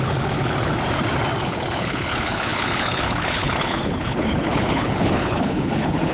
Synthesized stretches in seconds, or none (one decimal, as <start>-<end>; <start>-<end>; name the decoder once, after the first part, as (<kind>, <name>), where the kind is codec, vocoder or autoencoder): 0.0-0.7 (codec, HILCodec); 1.5-6.1